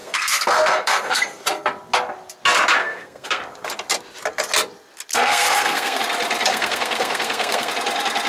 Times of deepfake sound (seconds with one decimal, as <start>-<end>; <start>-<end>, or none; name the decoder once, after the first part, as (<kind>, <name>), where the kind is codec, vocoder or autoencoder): 0.0-1.4 (codec, SNAC); 2.8-3.4; 5.1-6.0; 6.5-7.7